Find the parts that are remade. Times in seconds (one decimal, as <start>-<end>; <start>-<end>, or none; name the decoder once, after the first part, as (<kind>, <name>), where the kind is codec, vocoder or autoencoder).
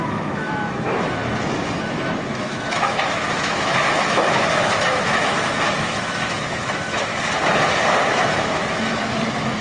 0.0-1.2 (autoencoder, DAC-VAE); 1.8-7.1; 8.1-9.6